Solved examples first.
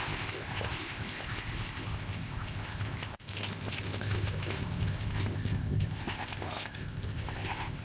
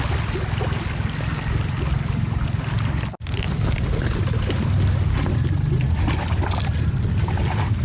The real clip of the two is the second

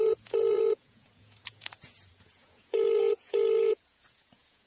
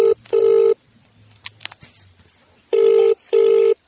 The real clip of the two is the second